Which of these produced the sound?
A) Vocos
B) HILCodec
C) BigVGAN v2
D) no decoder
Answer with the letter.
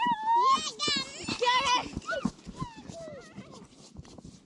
D